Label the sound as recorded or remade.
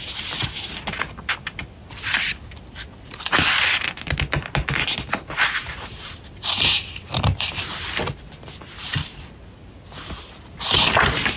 recorded